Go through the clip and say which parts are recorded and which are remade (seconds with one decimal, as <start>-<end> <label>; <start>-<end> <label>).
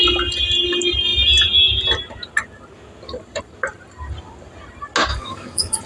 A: 0.0-5.1 recorded; 5.1-5.9 remade